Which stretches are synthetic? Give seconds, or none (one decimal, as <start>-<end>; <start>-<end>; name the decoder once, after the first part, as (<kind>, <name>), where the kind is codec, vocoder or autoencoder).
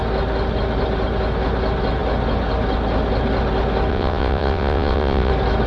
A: 3.9-5.3 (vocoder, WaveNeXt)